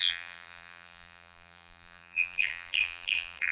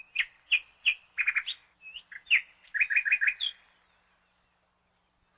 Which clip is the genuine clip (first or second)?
second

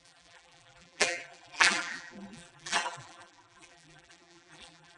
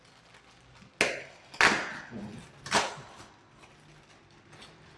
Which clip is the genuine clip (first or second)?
second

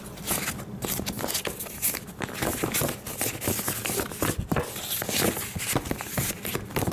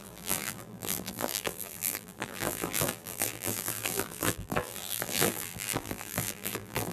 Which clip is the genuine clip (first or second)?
first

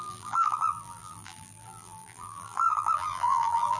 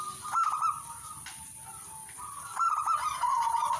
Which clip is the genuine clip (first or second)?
second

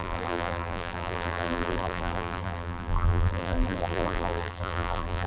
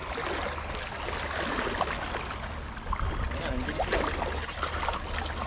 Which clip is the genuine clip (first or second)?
second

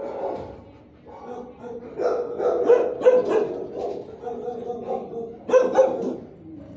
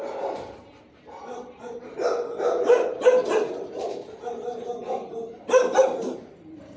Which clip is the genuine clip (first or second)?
first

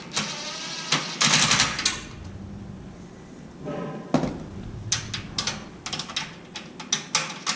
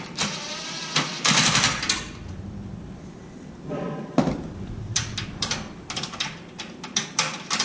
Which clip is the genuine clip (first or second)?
first